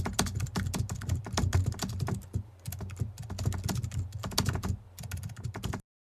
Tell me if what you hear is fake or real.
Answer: real